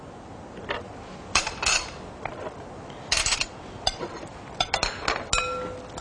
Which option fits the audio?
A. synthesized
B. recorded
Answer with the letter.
B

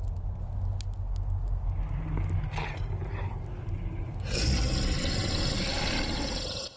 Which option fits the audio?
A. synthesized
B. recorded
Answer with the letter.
B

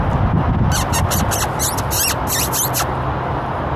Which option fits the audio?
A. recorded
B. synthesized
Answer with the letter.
A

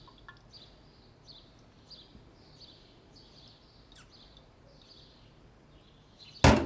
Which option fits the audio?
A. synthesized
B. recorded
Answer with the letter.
B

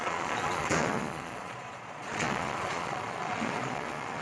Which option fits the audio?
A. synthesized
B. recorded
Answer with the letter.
A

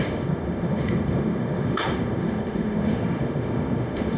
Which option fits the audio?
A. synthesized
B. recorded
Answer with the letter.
A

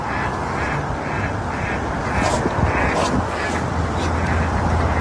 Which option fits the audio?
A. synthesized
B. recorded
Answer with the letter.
B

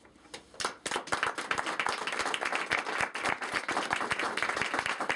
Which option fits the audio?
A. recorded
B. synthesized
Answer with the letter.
A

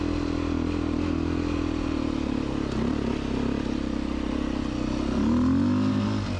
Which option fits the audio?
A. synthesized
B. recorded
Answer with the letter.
B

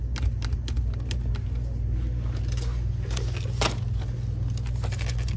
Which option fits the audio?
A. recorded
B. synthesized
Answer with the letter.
A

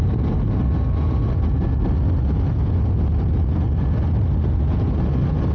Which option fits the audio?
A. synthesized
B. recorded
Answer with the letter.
B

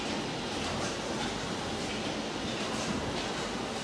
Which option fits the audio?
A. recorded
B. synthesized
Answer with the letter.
A